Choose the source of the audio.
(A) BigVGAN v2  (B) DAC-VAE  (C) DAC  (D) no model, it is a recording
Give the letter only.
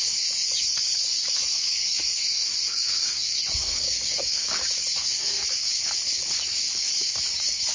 C